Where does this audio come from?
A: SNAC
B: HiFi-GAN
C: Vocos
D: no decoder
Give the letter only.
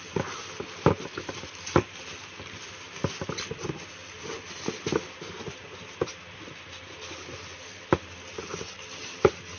D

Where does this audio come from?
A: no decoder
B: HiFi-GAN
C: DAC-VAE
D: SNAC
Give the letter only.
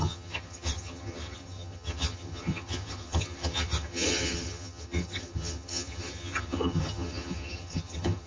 B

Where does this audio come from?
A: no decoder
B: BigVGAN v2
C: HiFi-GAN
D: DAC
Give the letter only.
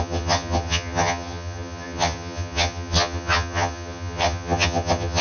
C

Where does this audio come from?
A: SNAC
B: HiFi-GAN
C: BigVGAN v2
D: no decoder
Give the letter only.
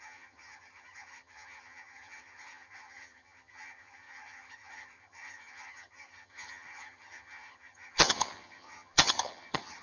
B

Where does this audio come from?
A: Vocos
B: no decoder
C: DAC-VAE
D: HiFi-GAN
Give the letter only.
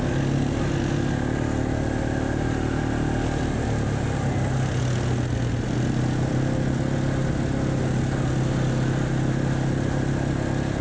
B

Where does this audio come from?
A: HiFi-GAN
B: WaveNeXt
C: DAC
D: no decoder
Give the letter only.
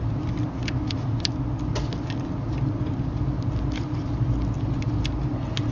D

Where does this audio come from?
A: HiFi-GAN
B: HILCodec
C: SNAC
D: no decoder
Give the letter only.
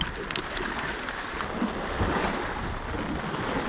D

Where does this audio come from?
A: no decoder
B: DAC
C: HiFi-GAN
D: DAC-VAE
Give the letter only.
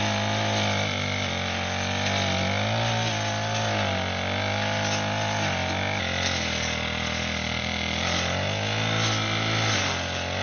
A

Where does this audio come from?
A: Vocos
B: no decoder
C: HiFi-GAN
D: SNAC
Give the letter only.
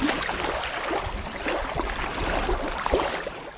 B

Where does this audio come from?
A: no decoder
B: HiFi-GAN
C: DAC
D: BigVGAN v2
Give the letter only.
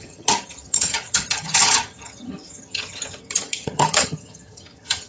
B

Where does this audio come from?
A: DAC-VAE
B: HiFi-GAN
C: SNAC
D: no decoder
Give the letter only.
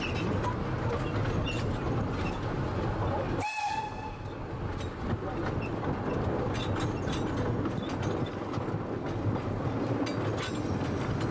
D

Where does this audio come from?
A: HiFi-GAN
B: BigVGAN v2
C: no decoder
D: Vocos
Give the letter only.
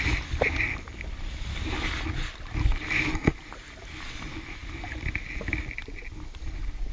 C